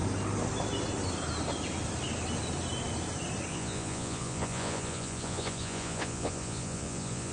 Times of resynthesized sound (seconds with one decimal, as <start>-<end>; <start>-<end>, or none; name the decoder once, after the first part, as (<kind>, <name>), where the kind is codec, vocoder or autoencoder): 3.5-7.3 (vocoder, Vocos)

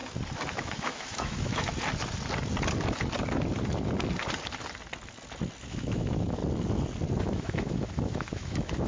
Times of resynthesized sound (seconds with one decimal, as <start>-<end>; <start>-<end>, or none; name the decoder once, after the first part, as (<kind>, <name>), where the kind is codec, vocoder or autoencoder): 0.5-1.7 (autoencoder, DAC-VAE); 5.6-6.4; 7.2-8.9

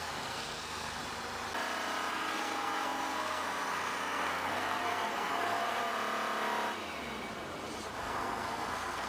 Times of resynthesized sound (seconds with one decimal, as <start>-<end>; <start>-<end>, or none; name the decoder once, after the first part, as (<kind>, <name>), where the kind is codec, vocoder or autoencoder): 0.0-1.0 (codec, SNAC); 2.1-5.8; 8.0-9.1

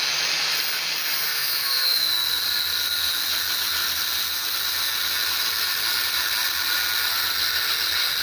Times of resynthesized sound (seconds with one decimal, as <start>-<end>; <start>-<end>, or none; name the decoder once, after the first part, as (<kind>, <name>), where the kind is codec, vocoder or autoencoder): 1.3-2.1 (autoencoder, DAC-VAE)

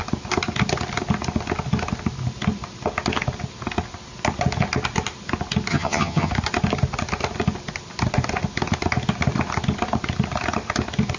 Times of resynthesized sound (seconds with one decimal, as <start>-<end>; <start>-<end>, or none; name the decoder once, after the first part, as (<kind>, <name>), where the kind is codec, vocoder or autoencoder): 5.7-6.3 (vocoder, HiFi-GAN)